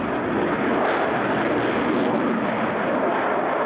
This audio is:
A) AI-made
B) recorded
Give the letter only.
B